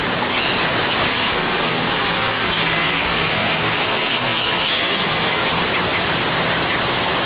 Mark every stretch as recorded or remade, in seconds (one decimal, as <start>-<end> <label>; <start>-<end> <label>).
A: 0.0-1.1 recorded; 1.1-5.5 remade; 5.5-7.3 recorded